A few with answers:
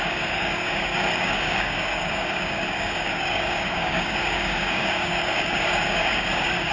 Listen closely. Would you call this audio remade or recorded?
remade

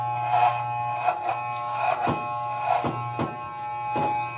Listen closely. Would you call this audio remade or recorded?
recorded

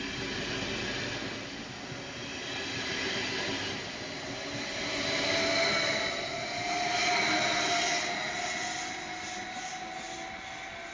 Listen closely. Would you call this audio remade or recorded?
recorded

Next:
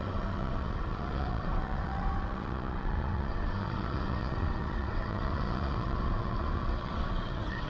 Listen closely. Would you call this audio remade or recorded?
remade